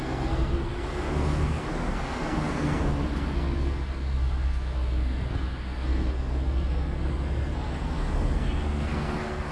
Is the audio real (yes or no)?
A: no